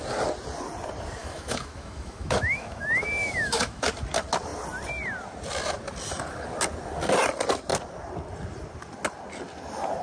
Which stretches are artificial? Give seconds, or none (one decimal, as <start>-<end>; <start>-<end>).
1.2-3.9